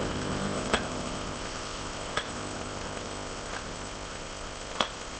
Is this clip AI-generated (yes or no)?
yes